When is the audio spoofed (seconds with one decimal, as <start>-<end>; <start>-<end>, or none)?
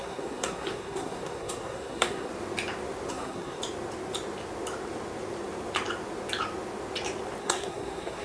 0.0-2.3; 3.1-3.6; 7.4-8.2